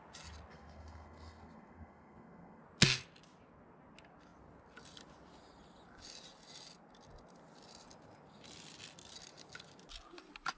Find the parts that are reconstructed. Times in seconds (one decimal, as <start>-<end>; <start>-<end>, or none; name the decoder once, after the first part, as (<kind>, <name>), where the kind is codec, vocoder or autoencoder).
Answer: 0.5-2.6 (codec, SNAC)